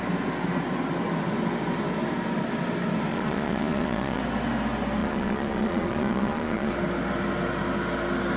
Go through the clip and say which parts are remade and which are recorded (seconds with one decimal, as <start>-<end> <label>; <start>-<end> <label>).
0.0-3.1 recorded; 3.1-4.2 remade; 4.2-5.0 recorded; 5.0-6.7 remade; 6.7-8.4 recorded